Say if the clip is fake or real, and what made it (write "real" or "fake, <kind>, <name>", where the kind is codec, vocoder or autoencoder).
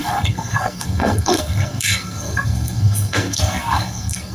fake, codec, SNAC